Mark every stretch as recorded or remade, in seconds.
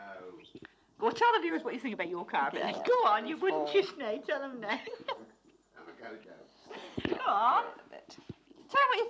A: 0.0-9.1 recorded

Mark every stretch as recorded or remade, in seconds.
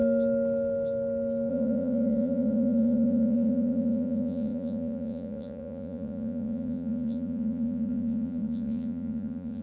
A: 0.0-1.5 recorded; 1.5-9.6 remade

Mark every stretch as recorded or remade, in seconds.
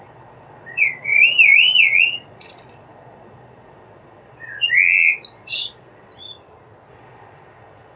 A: 0.0-1.1 remade; 1.1-1.8 recorded; 1.8-6.2 remade; 6.2-6.9 recorded; 6.9-8.0 remade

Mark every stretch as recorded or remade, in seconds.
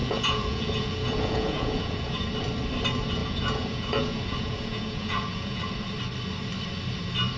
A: 0.0-2.3 remade; 2.3-3.2 recorded; 3.2-5.7 remade; 5.7-7.4 recorded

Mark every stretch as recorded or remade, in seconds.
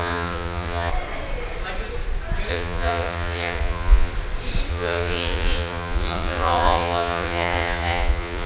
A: 0.0-0.9 remade; 0.9-2.5 recorded; 2.5-4.1 remade; 4.1-4.7 recorded; 4.7-8.5 remade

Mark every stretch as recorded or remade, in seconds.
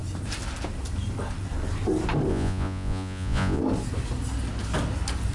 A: 0.0-2.3 recorded; 2.3-3.6 remade; 3.6-5.3 recorded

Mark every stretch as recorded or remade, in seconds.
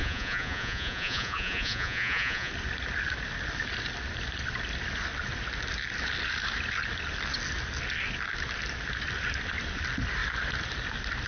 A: 0.0-2.5 remade; 2.5-11.3 recorded